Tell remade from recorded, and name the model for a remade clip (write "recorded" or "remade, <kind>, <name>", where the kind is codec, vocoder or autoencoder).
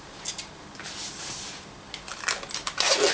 recorded